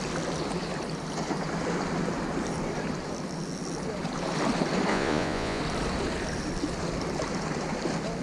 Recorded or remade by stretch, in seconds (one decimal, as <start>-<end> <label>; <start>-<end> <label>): 0.0-4.9 recorded; 4.9-5.6 remade; 5.6-8.2 recorded